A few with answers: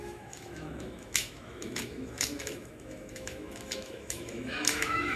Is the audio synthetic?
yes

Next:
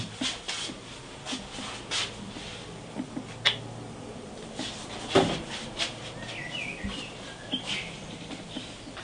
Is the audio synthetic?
no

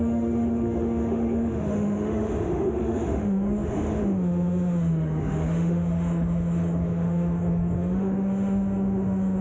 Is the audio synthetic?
yes